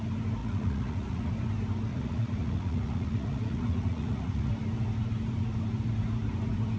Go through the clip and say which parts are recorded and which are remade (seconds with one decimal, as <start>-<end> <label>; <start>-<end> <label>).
0.0-0.4 recorded; 0.4-1.3 remade; 1.3-1.9 recorded; 1.9-4.5 remade; 4.5-6.8 recorded